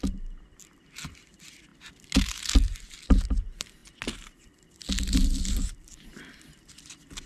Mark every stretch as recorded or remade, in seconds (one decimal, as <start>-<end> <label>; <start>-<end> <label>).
0.0-7.3 recorded